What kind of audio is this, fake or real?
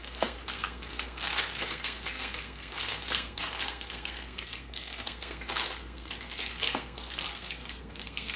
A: fake